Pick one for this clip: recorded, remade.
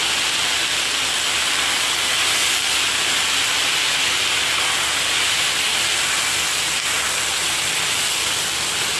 recorded